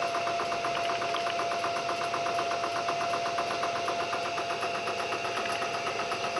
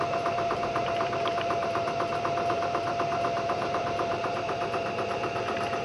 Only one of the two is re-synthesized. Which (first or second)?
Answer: second